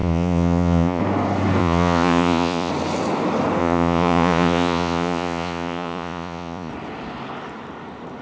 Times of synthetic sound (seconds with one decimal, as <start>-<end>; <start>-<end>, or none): 0.0-1.0; 1.6-2.7; 3.6-6.7